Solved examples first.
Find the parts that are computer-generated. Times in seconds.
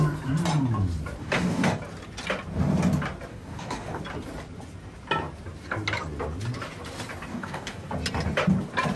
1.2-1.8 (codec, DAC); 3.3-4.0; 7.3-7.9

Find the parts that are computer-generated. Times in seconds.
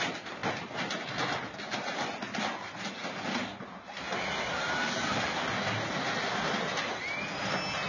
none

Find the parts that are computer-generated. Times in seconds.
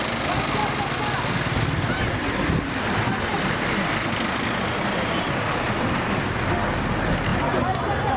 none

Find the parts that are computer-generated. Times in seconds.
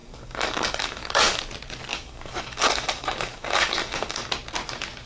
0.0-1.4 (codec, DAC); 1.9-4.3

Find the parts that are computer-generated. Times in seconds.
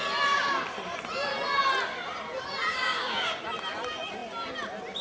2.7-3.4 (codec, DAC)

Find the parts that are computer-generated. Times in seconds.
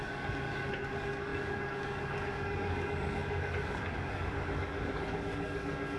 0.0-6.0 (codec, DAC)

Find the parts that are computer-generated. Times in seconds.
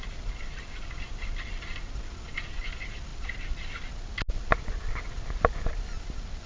none